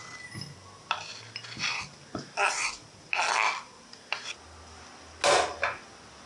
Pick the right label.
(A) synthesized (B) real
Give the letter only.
B